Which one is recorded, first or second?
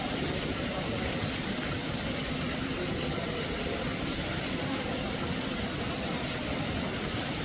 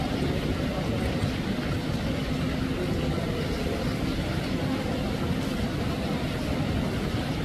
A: second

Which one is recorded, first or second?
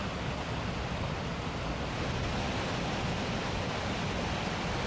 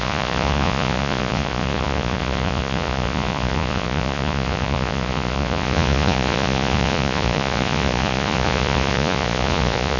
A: first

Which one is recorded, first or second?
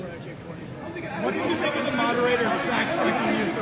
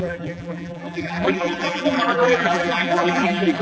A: first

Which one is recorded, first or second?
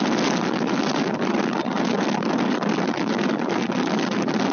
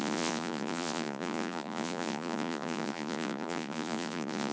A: first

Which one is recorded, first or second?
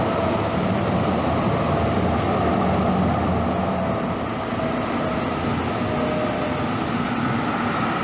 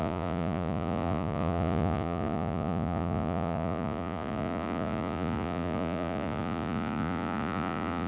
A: first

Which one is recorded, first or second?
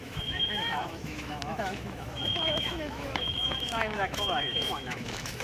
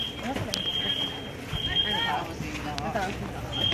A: second